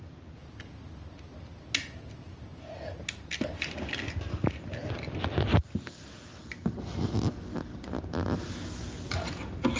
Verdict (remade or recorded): recorded